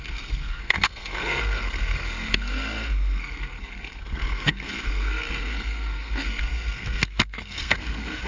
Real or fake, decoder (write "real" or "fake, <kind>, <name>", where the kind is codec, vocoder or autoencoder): fake, codec, SNAC